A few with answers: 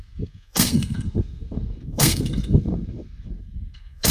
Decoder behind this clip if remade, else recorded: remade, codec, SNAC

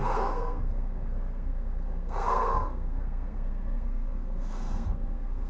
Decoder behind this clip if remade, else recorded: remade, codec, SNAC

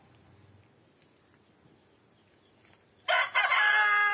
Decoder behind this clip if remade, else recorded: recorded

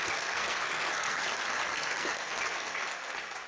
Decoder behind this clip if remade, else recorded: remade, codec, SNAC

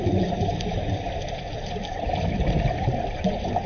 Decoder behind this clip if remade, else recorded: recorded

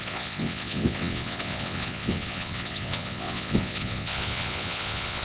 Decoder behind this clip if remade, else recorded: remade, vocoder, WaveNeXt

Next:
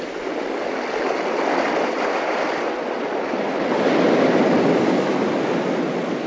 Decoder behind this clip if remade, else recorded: recorded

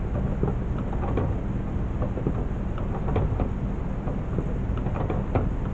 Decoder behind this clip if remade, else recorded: recorded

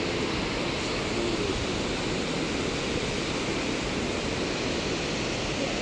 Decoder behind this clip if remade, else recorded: recorded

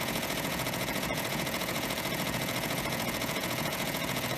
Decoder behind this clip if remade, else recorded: remade, vocoder, Vocos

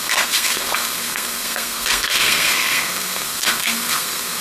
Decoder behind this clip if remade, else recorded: remade, codec, SNAC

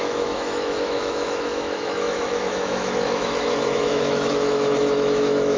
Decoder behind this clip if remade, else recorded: remade, autoencoder, DAC-VAE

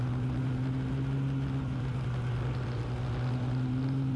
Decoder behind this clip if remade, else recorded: recorded